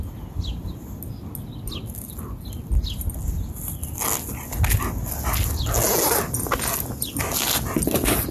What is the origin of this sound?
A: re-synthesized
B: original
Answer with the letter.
B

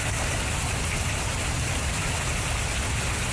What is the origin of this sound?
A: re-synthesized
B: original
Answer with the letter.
B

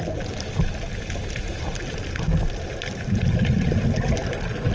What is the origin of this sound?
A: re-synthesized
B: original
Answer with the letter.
B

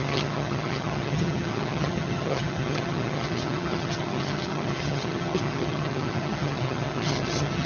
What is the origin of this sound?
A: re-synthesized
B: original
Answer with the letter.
A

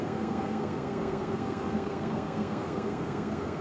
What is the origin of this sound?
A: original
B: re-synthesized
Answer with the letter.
B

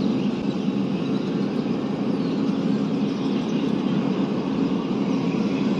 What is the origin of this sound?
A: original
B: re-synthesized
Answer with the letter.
A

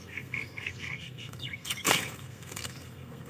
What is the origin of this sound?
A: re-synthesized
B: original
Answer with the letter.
A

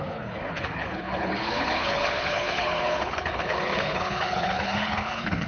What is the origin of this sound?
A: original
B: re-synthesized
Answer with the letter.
B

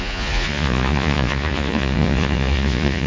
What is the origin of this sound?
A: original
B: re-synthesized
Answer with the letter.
B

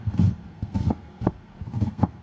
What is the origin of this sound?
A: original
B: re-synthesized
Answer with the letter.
B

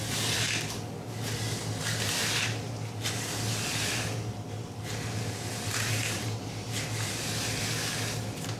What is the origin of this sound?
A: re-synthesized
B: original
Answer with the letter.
B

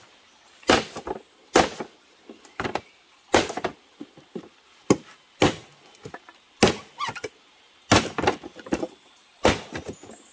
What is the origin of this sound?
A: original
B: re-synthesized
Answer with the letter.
A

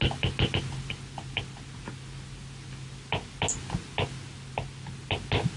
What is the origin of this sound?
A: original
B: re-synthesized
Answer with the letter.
A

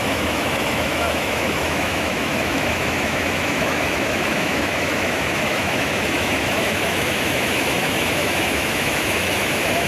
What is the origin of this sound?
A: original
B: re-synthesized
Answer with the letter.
B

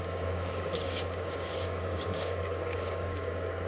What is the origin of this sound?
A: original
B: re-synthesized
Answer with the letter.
B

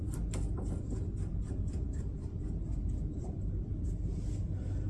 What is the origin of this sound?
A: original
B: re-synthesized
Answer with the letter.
A